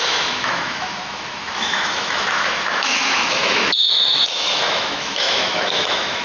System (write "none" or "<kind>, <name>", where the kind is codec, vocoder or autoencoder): autoencoder, DAC-VAE